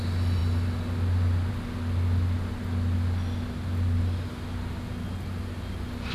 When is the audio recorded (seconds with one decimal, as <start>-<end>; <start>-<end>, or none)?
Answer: 0.0-6.1